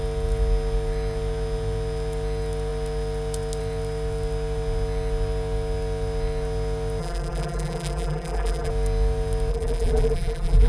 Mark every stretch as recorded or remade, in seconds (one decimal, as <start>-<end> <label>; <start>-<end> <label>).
0.0-7.0 recorded; 7.0-8.7 remade; 8.7-9.5 recorded; 9.5-10.7 remade